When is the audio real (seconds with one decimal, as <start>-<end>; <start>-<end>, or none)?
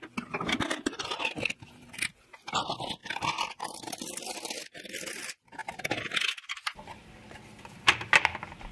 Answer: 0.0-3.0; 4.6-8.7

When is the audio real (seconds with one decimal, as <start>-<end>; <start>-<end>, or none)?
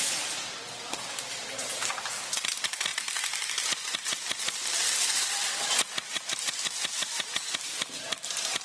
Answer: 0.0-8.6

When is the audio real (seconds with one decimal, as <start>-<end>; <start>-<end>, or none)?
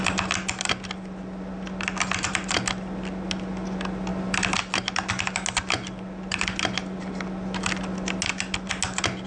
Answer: 0.0-9.3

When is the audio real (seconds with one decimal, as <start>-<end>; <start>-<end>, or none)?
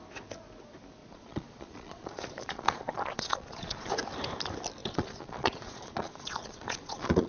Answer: 0.0-1.0; 3.9-4.8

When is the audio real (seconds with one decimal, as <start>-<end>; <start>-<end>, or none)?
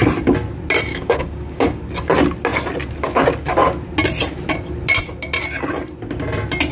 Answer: 0.0-0.9; 1.9-6.7